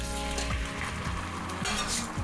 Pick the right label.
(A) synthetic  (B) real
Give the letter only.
B